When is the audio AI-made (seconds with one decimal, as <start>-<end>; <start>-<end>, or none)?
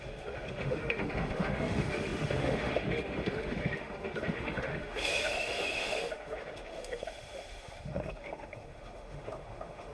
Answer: 0.0-9.9